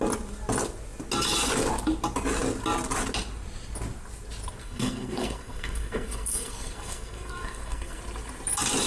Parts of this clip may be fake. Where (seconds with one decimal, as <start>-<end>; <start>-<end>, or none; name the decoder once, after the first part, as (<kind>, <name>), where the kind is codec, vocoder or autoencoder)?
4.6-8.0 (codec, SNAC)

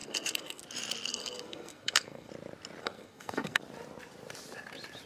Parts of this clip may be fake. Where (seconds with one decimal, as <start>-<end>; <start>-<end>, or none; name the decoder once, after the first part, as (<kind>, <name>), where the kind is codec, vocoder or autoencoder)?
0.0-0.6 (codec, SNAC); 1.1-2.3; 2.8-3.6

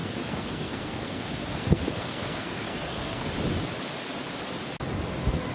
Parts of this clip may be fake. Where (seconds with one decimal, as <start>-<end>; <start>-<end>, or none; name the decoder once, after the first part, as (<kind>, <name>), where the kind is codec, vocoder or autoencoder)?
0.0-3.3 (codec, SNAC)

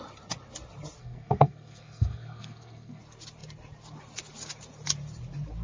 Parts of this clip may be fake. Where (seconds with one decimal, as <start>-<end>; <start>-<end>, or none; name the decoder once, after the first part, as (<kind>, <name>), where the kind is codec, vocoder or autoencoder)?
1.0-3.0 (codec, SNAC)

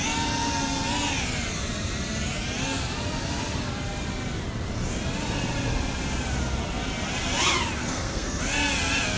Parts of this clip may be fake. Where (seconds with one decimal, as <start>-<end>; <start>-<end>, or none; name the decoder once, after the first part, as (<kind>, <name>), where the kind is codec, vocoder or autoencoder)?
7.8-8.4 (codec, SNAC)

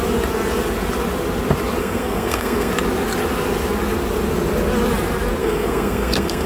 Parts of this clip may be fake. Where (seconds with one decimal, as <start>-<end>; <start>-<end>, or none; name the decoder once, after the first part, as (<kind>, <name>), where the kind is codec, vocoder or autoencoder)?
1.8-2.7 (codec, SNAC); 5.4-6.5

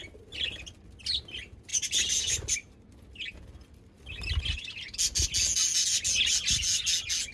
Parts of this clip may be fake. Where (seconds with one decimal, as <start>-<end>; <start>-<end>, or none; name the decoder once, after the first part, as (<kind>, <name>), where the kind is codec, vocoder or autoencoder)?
none